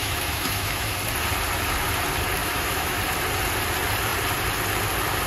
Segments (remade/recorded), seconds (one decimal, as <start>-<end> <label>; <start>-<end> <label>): 0.0-0.9 remade; 0.9-2.4 recorded; 2.4-3.0 remade; 3.0-5.3 recorded

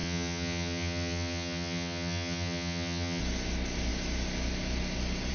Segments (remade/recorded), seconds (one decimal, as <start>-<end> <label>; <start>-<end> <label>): 0.0-3.2 remade; 3.2-5.3 recorded

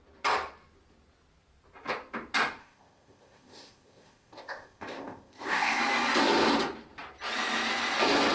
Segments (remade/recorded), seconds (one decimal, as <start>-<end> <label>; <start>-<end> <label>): 0.0-2.6 recorded; 2.6-5.8 remade; 5.8-8.3 recorded